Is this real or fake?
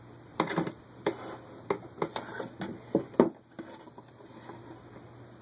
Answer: real